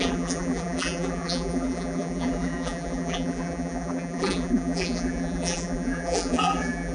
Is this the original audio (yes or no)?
no